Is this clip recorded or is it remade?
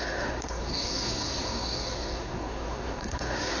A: remade